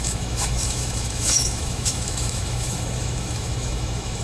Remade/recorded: remade